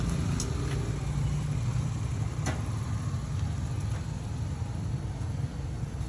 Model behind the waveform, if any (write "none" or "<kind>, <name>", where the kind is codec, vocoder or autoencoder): none